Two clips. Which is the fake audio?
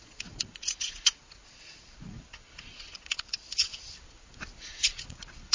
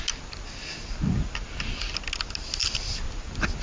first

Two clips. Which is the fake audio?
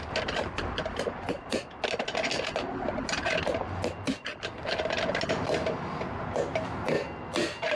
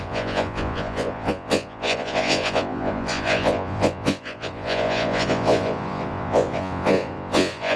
second